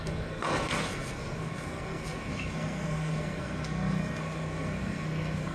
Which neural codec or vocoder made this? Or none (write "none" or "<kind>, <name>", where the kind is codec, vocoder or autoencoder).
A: codec, SNAC